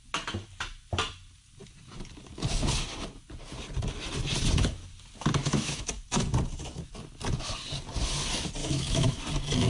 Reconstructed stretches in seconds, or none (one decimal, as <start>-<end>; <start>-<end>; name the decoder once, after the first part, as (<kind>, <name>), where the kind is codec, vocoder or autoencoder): 5.4-5.9 (autoencoder, DAC-VAE); 8.6-9.2